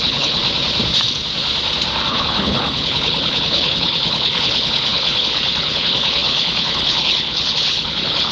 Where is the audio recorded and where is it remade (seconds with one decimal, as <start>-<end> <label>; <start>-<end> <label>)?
0.0-0.4 remade; 0.4-2.1 recorded; 2.1-8.3 remade